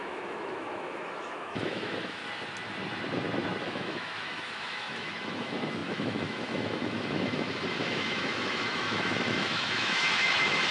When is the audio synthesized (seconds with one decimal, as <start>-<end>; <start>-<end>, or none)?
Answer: 0.0-2.2; 3.6-10.7